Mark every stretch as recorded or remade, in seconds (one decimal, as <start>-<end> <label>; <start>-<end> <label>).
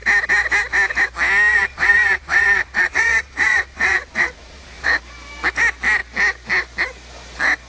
0.0-1.5 recorded; 1.5-4.9 remade; 4.9-7.7 recorded